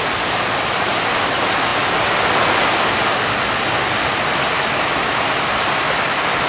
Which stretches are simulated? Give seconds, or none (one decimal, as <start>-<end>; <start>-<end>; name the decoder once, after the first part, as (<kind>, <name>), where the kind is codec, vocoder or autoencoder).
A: none